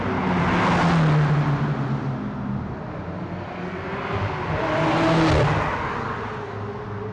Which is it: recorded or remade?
recorded